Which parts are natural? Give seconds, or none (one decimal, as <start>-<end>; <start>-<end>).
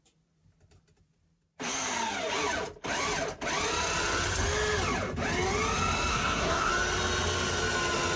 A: 0.0-6.1; 6.7-8.2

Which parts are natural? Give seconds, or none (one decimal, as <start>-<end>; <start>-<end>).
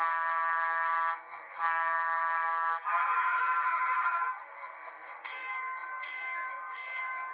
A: none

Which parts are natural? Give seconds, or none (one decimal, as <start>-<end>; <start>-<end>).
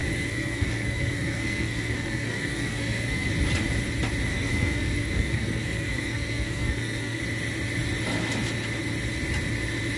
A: 3.3-4.3; 7.2-10.0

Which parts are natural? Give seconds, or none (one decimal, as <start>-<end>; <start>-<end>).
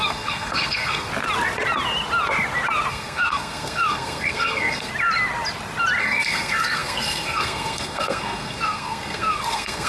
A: 1.1-2.9; 4.9-6.0